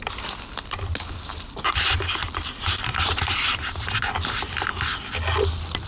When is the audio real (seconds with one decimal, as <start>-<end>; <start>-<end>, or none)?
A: 0.0-2.2; 4.3-5.9